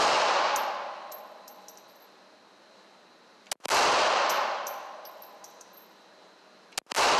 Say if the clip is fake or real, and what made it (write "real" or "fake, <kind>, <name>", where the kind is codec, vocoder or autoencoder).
real